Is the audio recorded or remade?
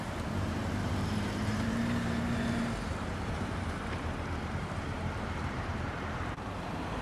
remade